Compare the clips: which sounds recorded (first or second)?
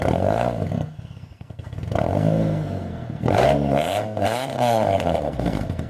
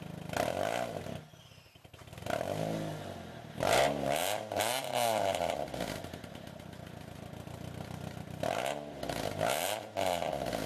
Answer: second